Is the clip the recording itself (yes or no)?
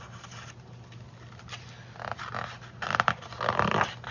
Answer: yes